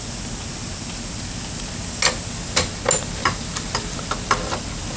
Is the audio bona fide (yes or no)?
yes